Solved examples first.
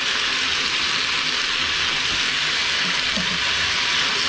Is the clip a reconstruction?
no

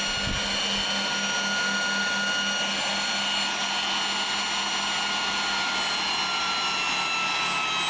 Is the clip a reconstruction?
no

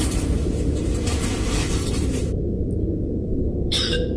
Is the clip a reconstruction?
yes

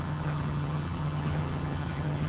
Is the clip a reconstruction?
yes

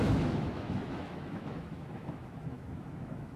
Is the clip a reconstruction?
yes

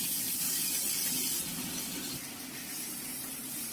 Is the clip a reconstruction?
yes